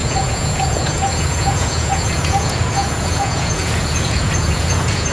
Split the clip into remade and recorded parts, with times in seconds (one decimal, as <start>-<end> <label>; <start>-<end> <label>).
0.0-5.1 remade